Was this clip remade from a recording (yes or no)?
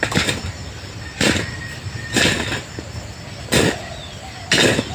no